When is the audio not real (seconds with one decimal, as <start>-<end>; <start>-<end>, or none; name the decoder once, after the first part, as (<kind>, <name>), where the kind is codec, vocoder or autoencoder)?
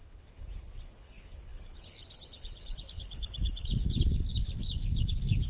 0.0-5.5 (codec, HILCodec)